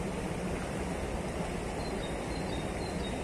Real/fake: real